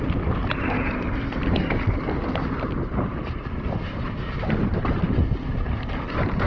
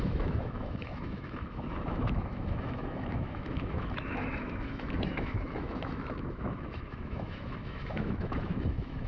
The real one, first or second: first